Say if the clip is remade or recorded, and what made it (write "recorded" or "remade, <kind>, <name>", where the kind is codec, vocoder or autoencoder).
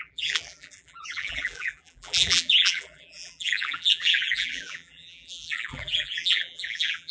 remade, vocoder, BigVGAN v2